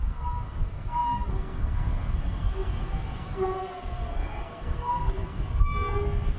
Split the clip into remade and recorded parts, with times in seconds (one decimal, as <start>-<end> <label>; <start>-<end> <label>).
0.0-6.4 remade